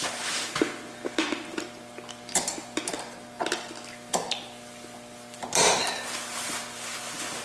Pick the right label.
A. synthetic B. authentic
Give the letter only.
B